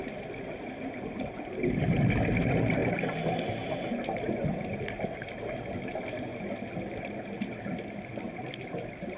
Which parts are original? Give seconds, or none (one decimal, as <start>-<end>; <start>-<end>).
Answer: 0.0-9.2